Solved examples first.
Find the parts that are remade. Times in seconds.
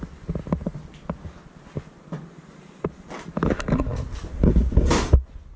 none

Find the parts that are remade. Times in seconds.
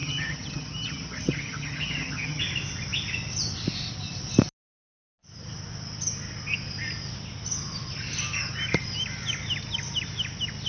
0.0-2.4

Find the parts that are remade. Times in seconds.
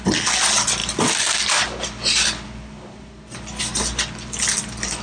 none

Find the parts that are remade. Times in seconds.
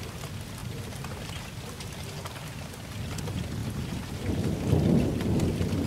0.6-1.7; 3.6-4.6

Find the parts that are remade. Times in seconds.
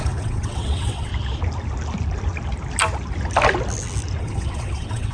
0.0-1.1; 4.2-5.1